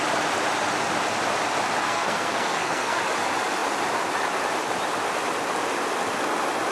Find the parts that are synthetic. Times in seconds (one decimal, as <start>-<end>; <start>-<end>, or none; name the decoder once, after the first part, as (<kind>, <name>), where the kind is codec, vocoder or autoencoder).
1.8-3.0 (codec, SNAC)